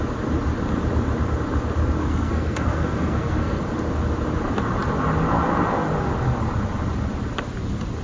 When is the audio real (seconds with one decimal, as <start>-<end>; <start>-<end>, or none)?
0.0-2.0; 3.6-8.0